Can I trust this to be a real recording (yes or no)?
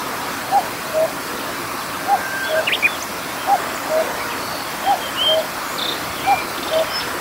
yes